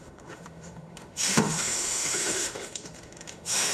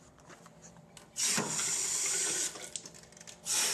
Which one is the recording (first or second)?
second